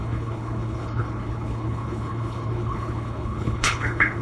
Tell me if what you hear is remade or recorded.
remade